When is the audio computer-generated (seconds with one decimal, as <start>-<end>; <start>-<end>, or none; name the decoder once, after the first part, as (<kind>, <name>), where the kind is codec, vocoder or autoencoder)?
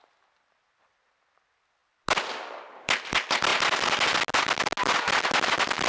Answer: none